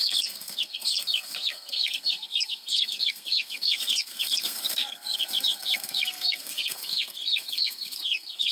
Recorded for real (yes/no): no